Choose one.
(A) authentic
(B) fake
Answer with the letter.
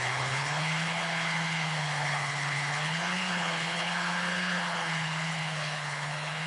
B